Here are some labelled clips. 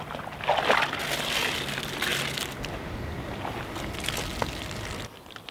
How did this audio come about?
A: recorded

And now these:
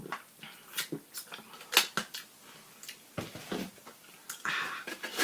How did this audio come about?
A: recorded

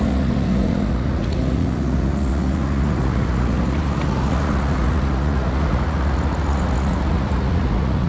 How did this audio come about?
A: remade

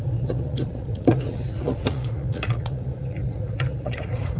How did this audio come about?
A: remade